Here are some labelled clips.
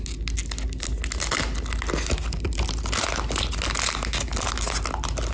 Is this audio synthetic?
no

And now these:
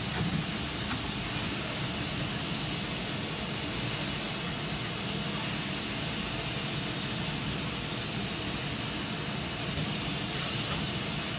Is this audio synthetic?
no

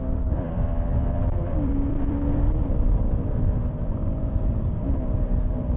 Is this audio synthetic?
yes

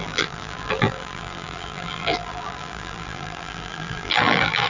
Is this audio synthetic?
yes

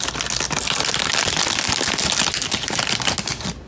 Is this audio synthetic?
no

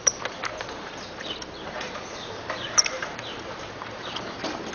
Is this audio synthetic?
yes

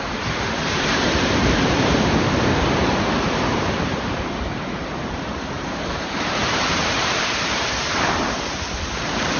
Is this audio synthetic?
yes